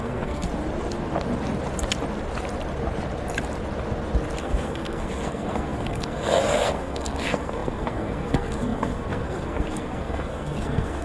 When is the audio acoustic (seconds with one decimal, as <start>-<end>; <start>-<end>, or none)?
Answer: 0.5-4.4